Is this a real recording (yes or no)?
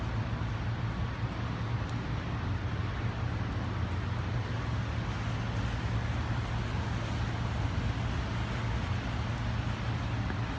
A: yes